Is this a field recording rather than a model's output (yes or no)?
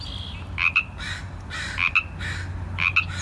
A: yes